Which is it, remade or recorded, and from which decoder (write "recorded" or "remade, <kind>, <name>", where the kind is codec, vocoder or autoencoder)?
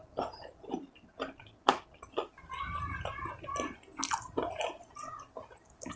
recorded